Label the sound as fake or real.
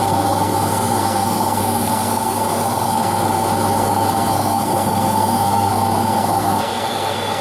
fake